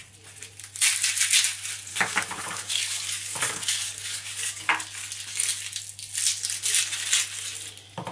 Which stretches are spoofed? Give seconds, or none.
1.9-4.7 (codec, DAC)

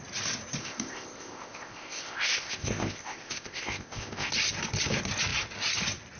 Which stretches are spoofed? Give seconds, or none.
0.6-4.3 (codec, ZipCodec)

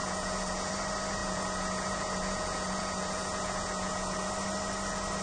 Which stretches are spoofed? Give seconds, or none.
0.0-0.7 (vocoder, Vocos); 1.2-4.3

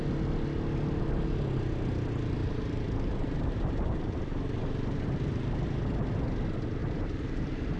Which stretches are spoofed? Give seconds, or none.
2.4-5.6 (vocoder, BigVGAN v2); 6.8-7.3